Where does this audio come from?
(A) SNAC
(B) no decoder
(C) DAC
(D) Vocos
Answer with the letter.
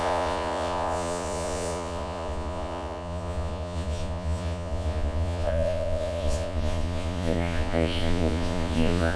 D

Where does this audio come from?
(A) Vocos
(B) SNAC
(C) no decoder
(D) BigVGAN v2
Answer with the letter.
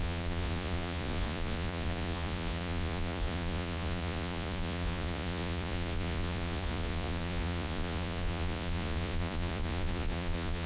A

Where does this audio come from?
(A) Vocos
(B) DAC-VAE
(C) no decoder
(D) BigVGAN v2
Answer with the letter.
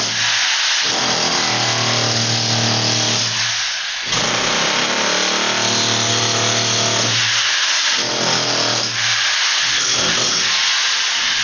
C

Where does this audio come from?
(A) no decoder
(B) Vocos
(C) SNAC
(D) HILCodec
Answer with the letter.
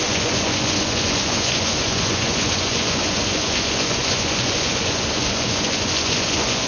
B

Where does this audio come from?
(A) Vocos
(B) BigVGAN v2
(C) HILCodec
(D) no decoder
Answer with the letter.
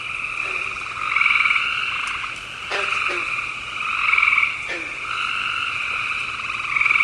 D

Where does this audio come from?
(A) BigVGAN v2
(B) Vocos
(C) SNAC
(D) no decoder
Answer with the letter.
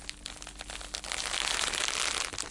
D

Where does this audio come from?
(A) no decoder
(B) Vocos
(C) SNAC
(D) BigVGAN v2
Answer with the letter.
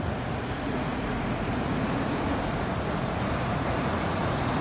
B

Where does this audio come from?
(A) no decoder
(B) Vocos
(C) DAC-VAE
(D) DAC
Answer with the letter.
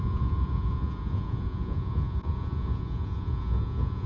B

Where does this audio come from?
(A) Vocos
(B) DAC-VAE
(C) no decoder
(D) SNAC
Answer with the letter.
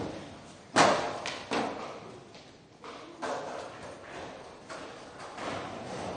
C